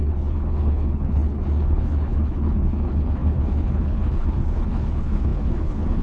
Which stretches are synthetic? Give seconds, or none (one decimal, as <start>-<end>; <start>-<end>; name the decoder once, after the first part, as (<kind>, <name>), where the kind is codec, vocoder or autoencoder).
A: 0.0-6.0 (codec, HILCodec)